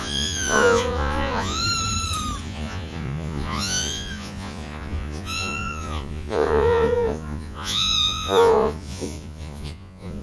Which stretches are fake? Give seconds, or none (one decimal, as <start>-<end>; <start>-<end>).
0.0-1.6; 2.4-10.2